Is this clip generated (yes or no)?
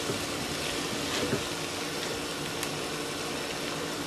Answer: no